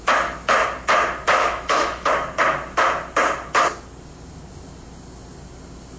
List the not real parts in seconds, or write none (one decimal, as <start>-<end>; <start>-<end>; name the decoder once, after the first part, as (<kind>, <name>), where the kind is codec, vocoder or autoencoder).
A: 1.4-2.1 (autoencoder, DAC-VAE)